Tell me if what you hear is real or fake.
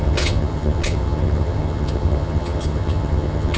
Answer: fake